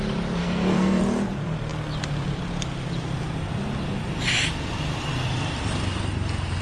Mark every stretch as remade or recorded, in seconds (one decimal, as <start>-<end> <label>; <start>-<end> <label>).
0.0-0.4 recorded; 0.4-1.0 remade; 1.0-6.6 recorded